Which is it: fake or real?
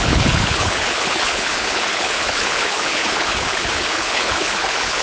fake